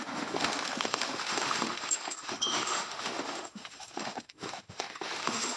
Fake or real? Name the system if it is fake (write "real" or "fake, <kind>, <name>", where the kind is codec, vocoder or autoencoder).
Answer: fake, autoencoder, DAC-VAE